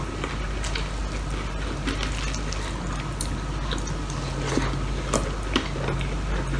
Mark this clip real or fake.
real